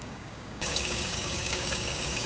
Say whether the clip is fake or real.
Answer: fake